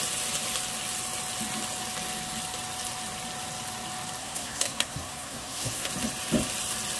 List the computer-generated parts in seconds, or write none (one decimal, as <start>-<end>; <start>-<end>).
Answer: 4.2-5.9